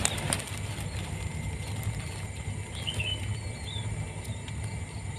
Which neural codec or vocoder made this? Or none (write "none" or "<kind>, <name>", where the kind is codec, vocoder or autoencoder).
none